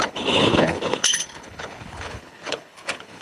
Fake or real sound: fake